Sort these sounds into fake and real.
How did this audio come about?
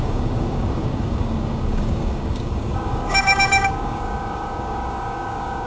fake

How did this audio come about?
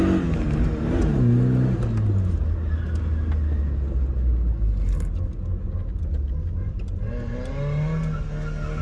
real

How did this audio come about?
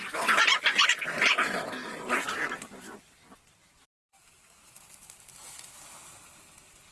real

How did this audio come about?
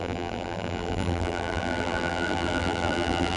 fake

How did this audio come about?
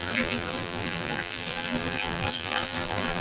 fake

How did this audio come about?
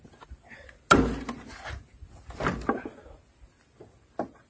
real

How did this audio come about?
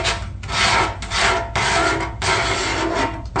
real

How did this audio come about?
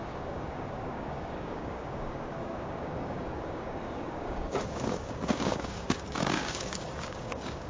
fake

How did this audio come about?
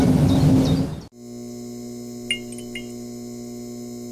real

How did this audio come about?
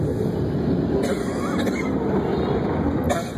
real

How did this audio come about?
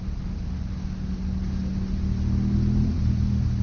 real